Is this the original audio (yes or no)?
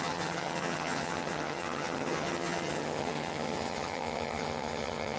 no